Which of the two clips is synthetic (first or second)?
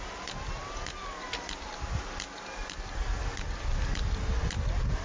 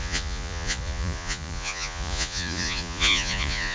second